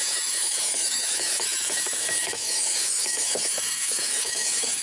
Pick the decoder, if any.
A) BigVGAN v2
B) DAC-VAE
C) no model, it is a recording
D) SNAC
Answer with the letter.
B